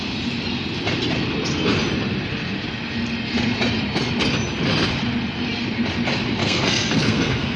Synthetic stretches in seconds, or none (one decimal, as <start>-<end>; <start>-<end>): 6.4-7.6